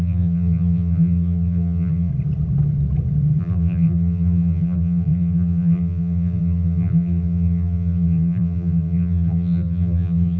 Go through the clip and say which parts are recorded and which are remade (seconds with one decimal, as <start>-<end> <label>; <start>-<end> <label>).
0.0-2.1 remade; 2.1-3.4 recorded; 3.4-10.4 remade

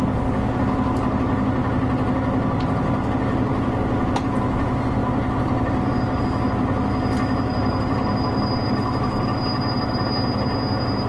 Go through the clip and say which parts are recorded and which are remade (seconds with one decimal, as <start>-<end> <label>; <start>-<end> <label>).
0.0-5.0 recorded; 5.0-6.2 remade; 6.2-11.1 recorded

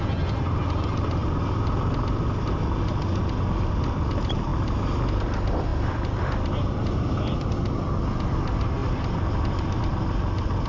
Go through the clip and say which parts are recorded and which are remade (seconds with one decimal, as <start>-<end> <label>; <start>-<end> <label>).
0.0-5.7 recorded; 5.7-7.5 remade; 7.5-8.8 recorded; 8.8-9.8 remade; 9.8-10.7 recorded

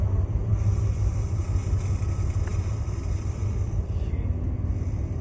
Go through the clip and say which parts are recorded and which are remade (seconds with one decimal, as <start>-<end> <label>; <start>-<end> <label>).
0.0-0.5 recorded; 0.5-1.4 remade; 1.4-2.5 recorded; 2.5-4.2 remade; 4.2-5.2 recorded

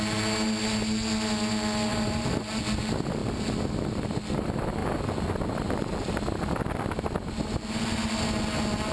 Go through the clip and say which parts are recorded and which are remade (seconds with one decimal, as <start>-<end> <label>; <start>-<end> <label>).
0.0-1.9 recorded; 1.9-2.6 remade; 2.6-8.9 recorded

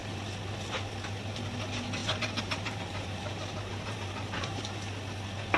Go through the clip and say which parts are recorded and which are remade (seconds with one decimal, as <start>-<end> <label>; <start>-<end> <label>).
0.0-2.0 recorded; 2.0-4.6 remade; 4.6-5.6 recorded

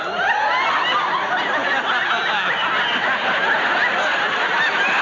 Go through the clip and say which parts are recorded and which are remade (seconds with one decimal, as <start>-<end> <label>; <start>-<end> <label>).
0.0-3.8 recorded; 3.8-5.0 remade

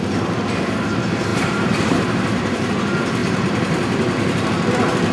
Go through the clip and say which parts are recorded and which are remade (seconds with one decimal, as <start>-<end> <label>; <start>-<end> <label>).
0.0-1.3 recorded; 1.3-2.7 remade; 2.7-3.2 recorded; 3.2-4.5 remade; 4.5-5.1 recorded